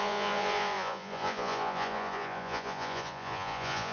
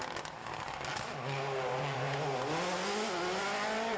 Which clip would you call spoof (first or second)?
first